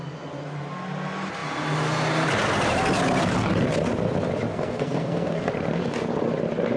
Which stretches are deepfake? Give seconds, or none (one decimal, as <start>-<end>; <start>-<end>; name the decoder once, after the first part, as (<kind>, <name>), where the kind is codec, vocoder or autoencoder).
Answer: 4.5-5.5 (codec, SNAC)

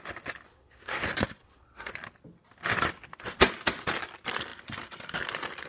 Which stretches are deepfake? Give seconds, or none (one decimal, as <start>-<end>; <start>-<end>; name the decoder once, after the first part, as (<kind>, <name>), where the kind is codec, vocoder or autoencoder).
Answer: 0.5-1.0 (codec, SNAC); 1.4-1.9

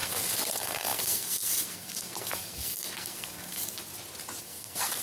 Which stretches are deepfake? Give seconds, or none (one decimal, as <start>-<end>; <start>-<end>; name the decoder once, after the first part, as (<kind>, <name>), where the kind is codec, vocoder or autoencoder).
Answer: 0.0-3.9 (codec, SNAC); 4.4-5.0

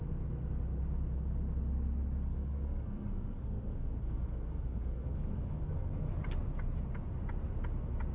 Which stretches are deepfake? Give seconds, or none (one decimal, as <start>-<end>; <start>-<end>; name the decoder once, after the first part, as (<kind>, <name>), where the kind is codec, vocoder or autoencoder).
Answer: 2.3-6.1 (codec, SNAC)